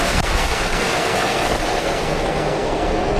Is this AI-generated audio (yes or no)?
yes